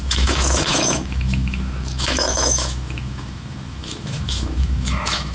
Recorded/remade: remade